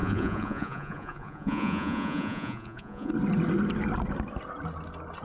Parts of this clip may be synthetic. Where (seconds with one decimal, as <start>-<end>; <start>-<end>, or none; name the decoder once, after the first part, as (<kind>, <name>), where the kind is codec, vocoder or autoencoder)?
0.0-3.1 (vocoder, Vocos)